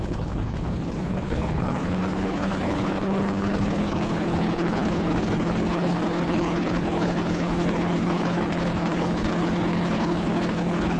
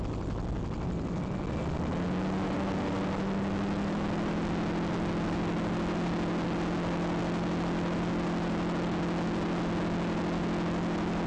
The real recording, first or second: second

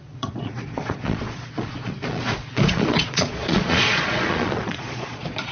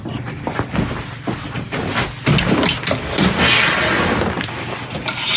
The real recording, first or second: second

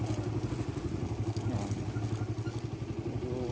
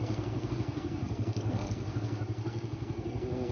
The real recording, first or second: first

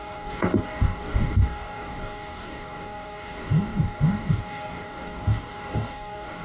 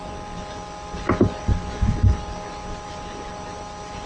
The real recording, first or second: second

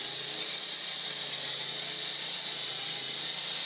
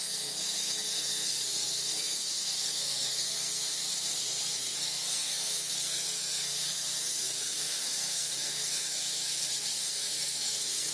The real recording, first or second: first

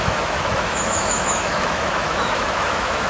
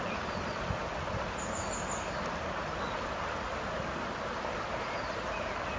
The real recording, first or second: second